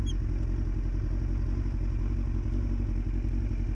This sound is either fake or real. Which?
real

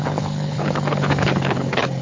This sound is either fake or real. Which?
fake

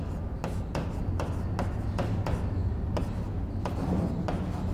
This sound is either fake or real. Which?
real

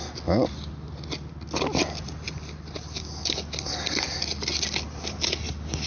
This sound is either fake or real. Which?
real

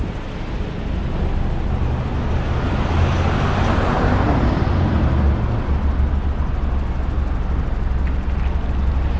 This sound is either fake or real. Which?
real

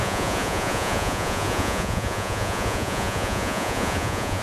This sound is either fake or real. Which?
fake